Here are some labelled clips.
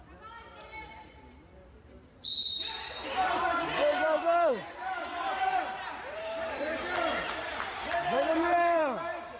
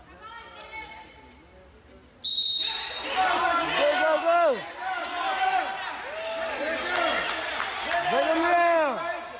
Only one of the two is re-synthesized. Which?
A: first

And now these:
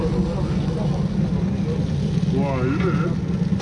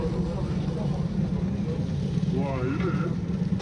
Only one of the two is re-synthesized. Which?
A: second